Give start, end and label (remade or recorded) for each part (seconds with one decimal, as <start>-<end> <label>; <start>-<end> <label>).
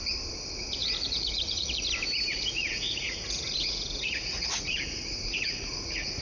0.0-0.8 recorded; 0.8-1.8 remade; 1.8-2.3 recorded; 2.3-6.2 remade